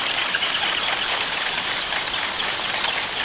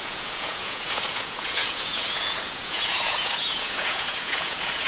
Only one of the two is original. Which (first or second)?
first